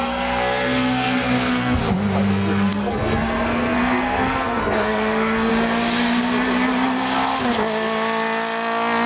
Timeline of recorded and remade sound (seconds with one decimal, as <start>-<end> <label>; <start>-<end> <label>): 0.0-1.8 remade; 1.8-2.3 recorded; 2.3-5.5 remade; 5.5-9.1 recorded